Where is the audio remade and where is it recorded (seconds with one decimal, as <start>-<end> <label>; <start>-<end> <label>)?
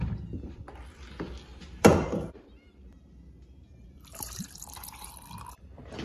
0.0-1.5 recorded; 1.5-5.1 remade; 5.1-6.0 recorded